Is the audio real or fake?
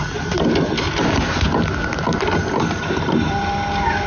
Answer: real